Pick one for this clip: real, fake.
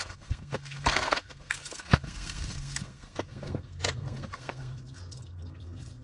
fake